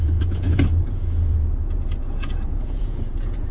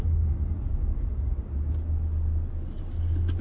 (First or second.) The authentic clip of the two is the second